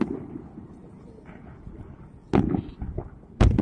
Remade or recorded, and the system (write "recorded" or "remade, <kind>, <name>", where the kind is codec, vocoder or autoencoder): recorded